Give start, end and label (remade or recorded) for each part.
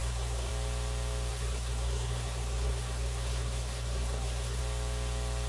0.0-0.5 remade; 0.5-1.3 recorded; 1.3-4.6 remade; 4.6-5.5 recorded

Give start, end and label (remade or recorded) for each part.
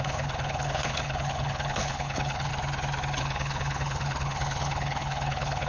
0.0-2.5 remade; 2.5-3.2 recorded; 3.2-5.7 remade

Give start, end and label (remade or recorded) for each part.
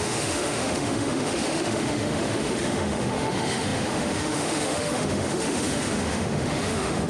0.0-7.1 remade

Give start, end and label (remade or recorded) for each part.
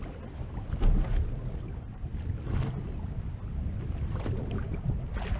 0.0-5.4 recorded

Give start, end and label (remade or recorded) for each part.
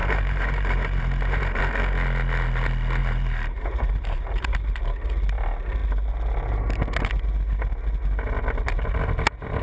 0.0-1.6 remade; 1.6-3.0 recorded; 3.0-4.6 remade; 4.6-9.6 recorded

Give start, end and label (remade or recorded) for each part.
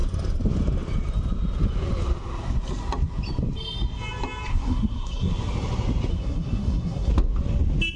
0.0-4.5 recorded; 4.5-5.3 remade; 5.3-6.1 recorded; 6.1-7.1 remade; 7.1-8.0 recorded